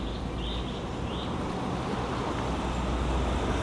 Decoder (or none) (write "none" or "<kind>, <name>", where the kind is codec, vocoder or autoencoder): none